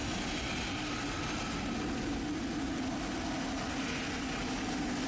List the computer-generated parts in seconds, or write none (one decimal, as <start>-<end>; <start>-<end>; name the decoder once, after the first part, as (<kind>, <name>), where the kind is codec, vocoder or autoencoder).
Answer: none